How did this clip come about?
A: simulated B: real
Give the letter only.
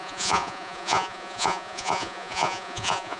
A